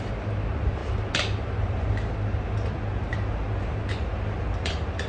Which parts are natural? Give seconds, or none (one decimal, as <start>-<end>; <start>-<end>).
0.0-5.1